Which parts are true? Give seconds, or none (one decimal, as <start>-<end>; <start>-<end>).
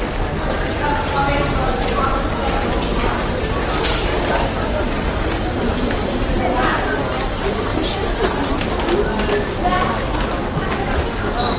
0.0-11.6